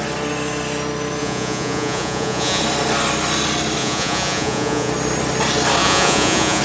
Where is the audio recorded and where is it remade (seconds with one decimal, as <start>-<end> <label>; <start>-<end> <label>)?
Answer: 0.0-1.2 recorded; 1.2-2.6 remade; 2.6-3.8 recorded; 3.8-4.9 remade; 4.9-5.8 recorded; 5.8-6.6 remade